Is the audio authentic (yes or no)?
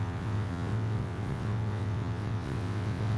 no